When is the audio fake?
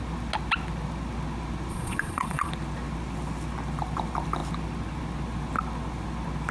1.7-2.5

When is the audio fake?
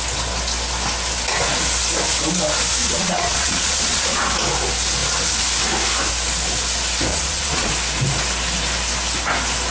2.8-4.2; 7.1-7.7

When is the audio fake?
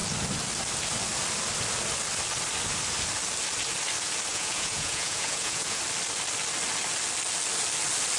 4.3-5.8